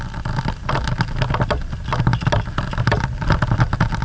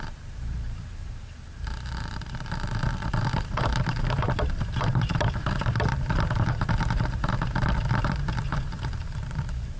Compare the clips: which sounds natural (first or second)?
first